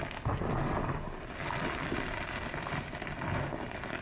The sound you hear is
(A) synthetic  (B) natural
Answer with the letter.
B